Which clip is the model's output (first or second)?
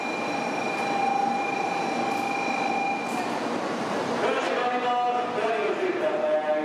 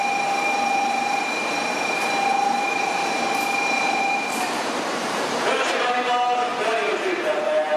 second